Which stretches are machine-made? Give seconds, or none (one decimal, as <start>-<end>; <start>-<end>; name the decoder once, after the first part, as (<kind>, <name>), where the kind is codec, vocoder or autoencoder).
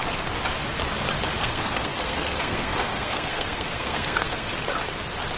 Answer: 1.4-4.5 (codec, SNAC)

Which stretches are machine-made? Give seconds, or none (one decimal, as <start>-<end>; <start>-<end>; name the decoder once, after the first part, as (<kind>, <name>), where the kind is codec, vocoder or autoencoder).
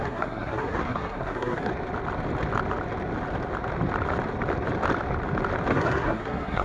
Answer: 0.0-1.7 (codec, SNAC); 5.7-6.6